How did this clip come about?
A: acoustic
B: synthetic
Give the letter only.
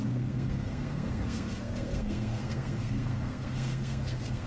B